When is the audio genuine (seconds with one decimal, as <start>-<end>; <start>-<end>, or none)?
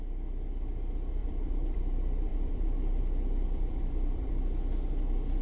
0.0-1.2; 1.8-2.3; 4.3-5.4